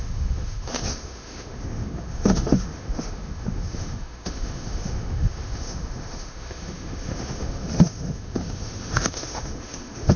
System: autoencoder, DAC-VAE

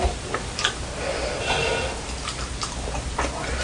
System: none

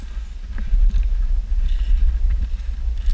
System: none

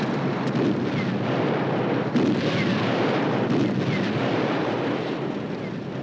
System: none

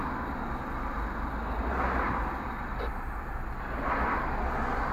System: none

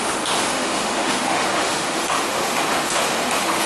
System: autoencoder, DAC-VAE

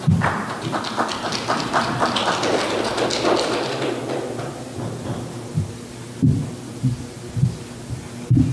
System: none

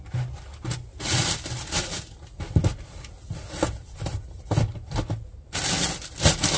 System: none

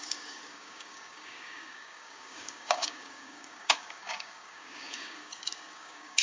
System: codec, DAC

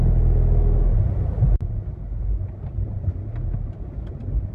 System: none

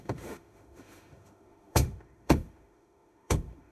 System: autoencoder, DAC-VAE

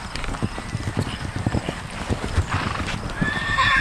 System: none